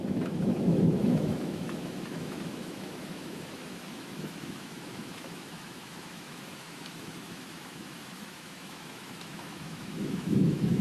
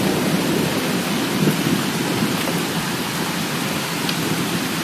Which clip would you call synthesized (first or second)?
first